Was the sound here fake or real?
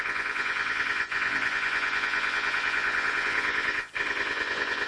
fake